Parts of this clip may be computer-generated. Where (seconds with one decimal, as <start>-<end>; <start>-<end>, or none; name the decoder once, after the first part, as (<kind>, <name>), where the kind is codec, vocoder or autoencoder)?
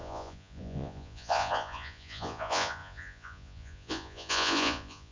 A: 0.0-5.1 (vocoder, Vocos)